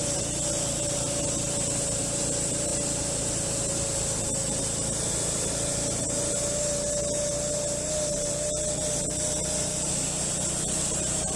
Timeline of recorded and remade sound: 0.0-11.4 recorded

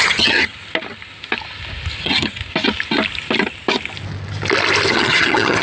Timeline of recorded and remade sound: 0.0-0.5 remade; 0.5-2.0 recorded; 2.0-2.4 remade; 2.4-4.9 recorded; 4.9-5.6 remade

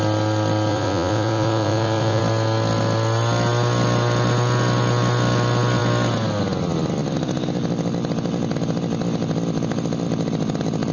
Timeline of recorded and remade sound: 0.0-0.7 recorded; 0.7-2.2 remade; 2.2-10.9 recorded

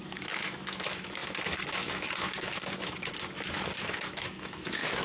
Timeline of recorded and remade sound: 0.0-5.0 remade

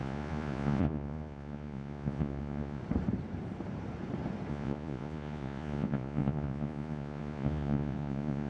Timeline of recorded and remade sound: 0.0-2.8 remade; 2.8-4.5 recorded; 4.5-8.5 remade